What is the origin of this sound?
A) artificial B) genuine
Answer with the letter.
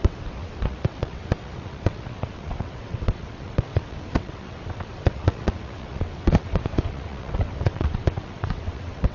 A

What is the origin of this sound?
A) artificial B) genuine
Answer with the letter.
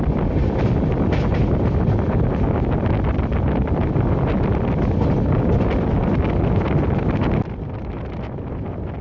B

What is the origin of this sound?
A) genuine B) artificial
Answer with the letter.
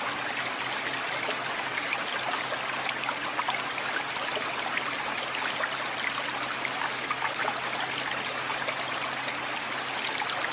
A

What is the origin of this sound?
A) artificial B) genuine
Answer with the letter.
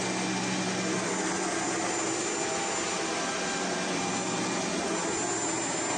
B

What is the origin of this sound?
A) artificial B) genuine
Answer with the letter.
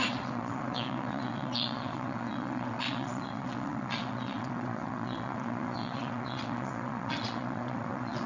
A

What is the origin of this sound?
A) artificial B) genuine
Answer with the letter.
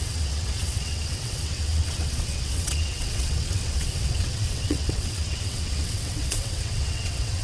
A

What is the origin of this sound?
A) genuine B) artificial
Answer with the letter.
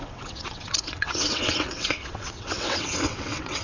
B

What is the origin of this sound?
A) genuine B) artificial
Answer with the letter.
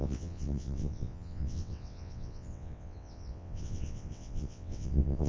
B